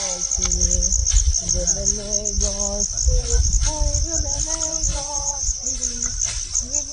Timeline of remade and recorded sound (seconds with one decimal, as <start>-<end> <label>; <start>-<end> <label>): 0.0-4.9 recorded; 4.9-5.8 remade; 5.8-6.9 recorded